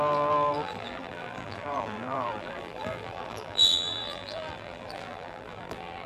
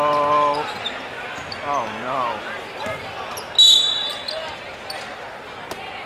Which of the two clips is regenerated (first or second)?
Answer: first